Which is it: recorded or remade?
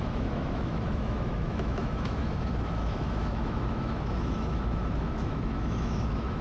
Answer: remade